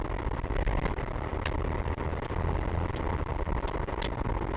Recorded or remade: recorded